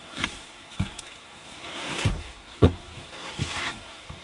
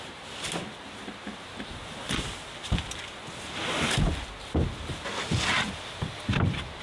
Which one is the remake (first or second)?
first